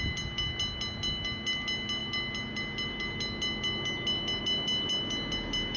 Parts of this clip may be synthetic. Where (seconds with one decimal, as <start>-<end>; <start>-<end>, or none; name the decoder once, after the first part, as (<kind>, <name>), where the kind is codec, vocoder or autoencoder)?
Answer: none